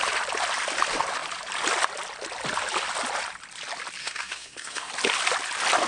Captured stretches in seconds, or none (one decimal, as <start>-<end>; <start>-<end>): 0.0-4.0; 4.9-5.9